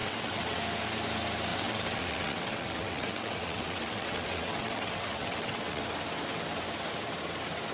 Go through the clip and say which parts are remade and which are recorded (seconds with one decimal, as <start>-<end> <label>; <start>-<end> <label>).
0.0-0.6 remade; 0.6-1.5 recorded; 1.5-5.8 remade; 5.8-7.7 recorded